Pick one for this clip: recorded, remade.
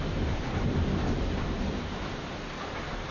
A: remade